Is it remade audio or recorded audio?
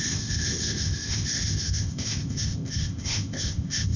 remade